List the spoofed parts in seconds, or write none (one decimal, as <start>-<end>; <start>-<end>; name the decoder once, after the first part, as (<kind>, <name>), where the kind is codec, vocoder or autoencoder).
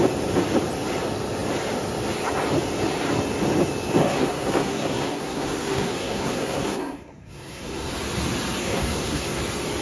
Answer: 4.0-7.9 (codec, SNAC); 8.6-9.4